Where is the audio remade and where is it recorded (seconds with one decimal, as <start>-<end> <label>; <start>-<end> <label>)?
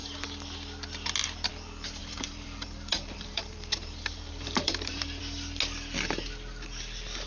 0.0-2.0 recorded; 2.0-5.2 remade; 5.2-7.3 recorded